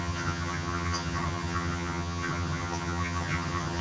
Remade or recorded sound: remade